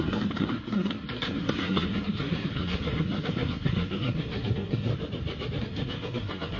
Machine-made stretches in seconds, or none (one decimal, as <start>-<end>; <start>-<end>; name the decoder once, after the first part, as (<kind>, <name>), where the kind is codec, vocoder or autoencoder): 0.0-4.9 (codec, SNAC); 5.6-6.6